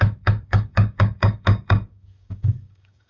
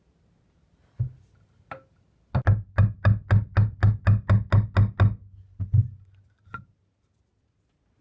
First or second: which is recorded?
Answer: second